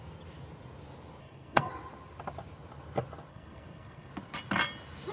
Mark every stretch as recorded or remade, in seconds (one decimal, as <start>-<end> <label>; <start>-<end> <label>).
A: 0.0-1.2 recorded; 1.2-1.7 remade; 1.7-3.3 recorded; 3.3-4.1 remade; 4.1-5.1 recorded